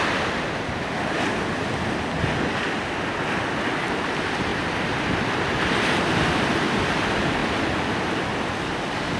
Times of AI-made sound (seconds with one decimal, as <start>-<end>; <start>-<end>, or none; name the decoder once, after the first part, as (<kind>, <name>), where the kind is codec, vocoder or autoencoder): none